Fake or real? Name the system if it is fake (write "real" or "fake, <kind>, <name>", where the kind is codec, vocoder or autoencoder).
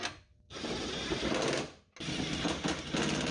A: real